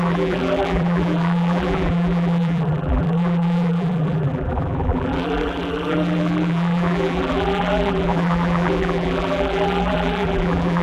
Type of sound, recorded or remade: remade